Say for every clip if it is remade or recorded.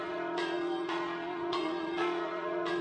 remade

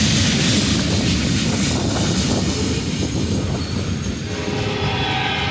recorded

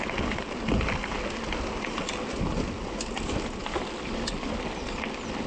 recorded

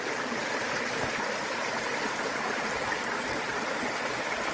recorded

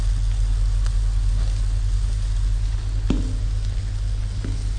recorded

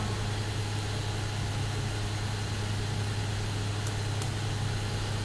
recorded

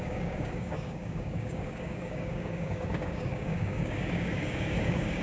remade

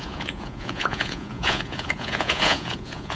remade